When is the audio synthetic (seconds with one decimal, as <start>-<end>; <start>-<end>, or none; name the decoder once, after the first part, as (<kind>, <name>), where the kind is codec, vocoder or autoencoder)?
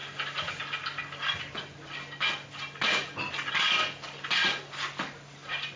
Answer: none